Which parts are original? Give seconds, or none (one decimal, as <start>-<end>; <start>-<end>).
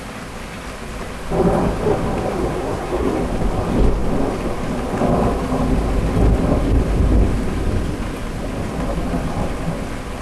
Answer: 0.0-2.4; 3.1-10.2